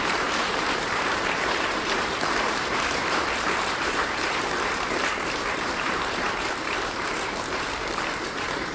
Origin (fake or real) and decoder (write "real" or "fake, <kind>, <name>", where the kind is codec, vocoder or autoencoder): fake, vocoder, BigVGAN v2